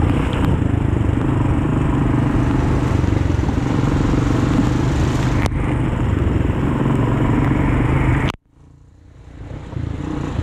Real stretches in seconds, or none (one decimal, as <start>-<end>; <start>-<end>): 0.0-8.1; 10.0-10.4